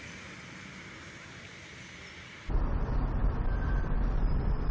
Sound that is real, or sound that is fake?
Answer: real